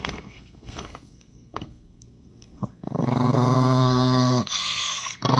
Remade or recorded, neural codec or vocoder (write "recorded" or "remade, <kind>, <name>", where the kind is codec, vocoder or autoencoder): remade, codec, SNAC